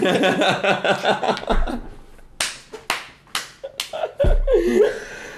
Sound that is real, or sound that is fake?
real